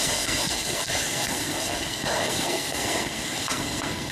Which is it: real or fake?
fake